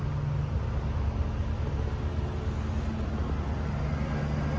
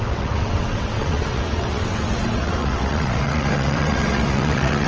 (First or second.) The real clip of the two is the first